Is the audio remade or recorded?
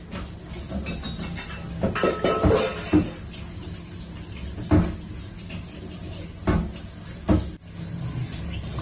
recorded